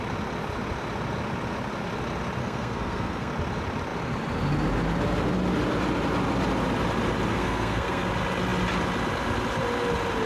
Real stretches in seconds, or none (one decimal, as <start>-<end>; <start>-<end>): 0.0-2.4; 3.3-7.3; 8.1-10.3